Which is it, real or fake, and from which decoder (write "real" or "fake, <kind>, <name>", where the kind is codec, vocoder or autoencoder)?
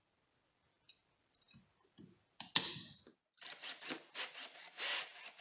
real